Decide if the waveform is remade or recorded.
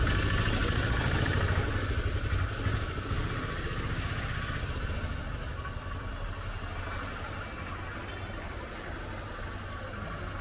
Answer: recorded